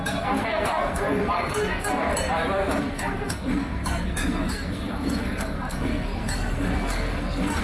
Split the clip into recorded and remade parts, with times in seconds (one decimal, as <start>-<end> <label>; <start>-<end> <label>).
0.0-2.1 remade; 2.1-2.8 recorded; 2.8-7.6 remade